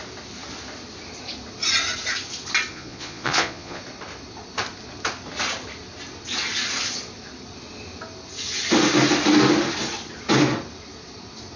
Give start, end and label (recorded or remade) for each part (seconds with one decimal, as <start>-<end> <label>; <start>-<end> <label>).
0.0-2.7 recorded; 2.7-3.8 remade; 3.8-11.6 recorded